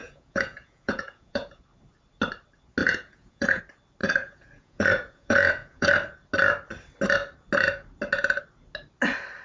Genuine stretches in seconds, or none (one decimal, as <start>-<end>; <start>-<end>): 1.6-2.8; 3.6-4.0; 5.9-9.4